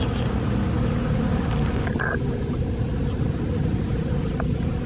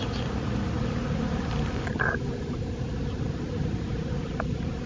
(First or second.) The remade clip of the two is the second